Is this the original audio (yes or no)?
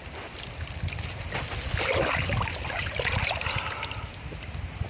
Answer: yes